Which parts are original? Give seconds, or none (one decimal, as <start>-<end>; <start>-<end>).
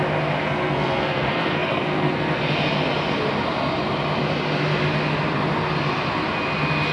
0.0-0.4; 2.4-6.9